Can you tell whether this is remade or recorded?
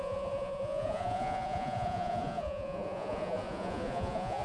remade